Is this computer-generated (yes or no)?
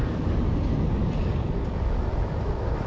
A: no